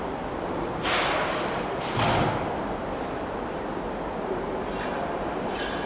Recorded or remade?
recorded